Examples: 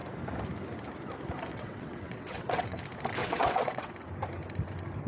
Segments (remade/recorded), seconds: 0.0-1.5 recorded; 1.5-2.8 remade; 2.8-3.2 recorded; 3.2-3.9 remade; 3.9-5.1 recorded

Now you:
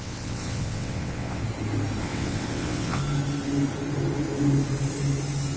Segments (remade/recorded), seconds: 0.0-1.4 remade; 1.4-2.0 recorded; 2.0-3.0 remade; 3.0-5.6 recorded

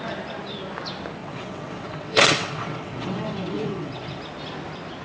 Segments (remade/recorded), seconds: 0.0-1.2 recorded; 1.2-4.2 remade; 4.2-5.0 recorded

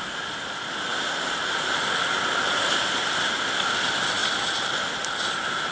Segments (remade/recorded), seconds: 0.0-5.7 recorded

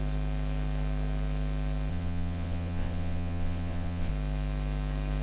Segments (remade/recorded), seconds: 0.0-1.9 recorded; 1.9-4.1 remade; 4.1-5.2 recorded

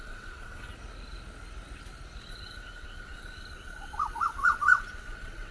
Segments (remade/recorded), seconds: 0.0-0.7 remade; 0.7-2.3 recorded; 2.3-5.5 remade

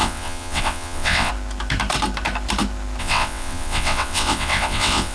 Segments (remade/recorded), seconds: 0.0-1.3 remade; 1.3-3.0 recorded; 3.0-5.1 remade

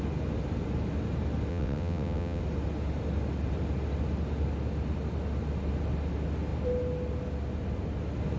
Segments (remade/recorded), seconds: 0.0-1.5 recorded; 1.5-2.4 remade; 2.4-8.4 recorded